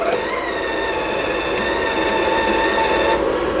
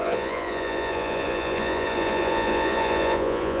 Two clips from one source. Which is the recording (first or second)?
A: first